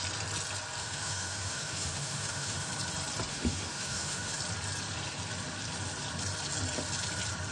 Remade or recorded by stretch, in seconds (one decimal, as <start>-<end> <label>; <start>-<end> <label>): 0.0-0.8 recorded; 0.8-2.7 remade; 2.7-3.3 recorded; 3.3-4.4 remade; 4.4-7.5 recorded